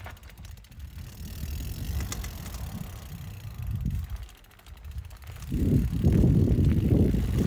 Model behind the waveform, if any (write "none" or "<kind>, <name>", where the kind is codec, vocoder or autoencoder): none